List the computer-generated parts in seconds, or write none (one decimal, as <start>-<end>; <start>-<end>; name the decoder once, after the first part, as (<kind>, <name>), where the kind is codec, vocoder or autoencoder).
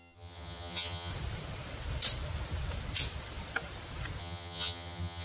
0.0-1.1 (vocoder, HiFi-GAN); 4.2-5.2